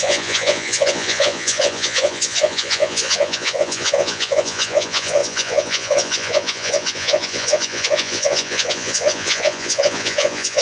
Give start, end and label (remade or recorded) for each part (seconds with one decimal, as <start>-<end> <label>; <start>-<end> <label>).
0.0-10.6 remade